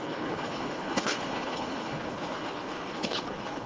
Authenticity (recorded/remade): remade